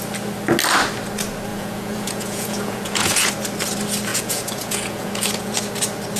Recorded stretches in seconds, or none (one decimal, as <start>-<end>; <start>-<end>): 0.0-1.5; 3.3-4.1; 5.6-6.2